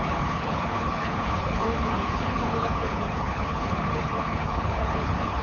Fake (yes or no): yes